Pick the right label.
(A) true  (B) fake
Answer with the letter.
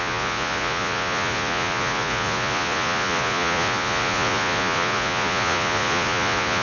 B